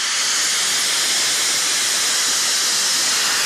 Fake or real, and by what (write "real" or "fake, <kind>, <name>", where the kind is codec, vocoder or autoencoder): real